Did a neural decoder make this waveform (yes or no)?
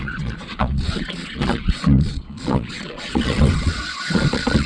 yes